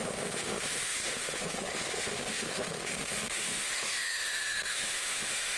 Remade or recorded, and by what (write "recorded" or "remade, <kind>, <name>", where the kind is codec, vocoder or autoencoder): remade, autoencoder, DAC-VAE